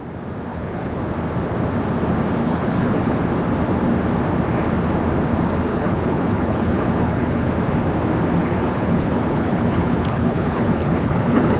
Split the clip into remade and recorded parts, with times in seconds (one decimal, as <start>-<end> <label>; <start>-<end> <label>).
0.0-0.5 recorded; 0.5-1.0 remade; 1.0-2.4 recorded; 2.4-3.2 remade; 3.2-5.7 recorded; 5.7-7.5 remade; 7.5-8.4 recorded; 8.4-11.6 remade